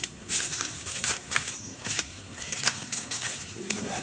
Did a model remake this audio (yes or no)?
yes